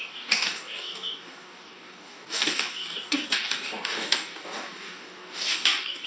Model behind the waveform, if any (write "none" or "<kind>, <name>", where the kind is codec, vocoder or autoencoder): codec, DAC